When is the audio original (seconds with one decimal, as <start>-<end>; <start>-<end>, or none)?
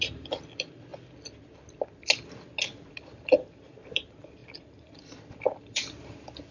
0.9-2.6